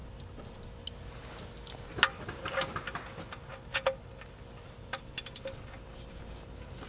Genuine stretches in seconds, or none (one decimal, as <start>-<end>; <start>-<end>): 0.0-6.9